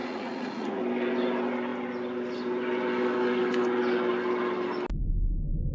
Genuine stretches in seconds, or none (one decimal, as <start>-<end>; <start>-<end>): 0.8-5.7